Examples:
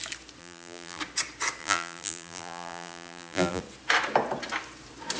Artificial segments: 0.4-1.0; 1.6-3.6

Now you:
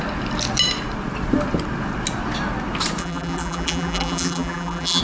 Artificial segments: 3.0-5.0

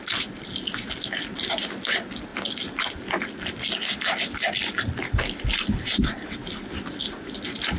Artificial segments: none

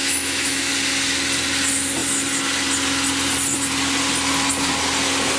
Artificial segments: 0.0-0.7

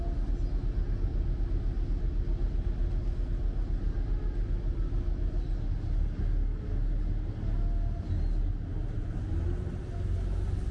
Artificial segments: none